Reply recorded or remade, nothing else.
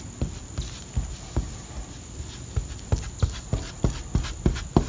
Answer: recorded